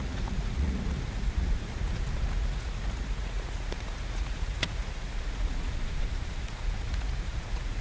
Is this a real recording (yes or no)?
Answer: no